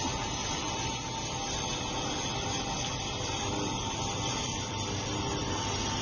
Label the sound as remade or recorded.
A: recorded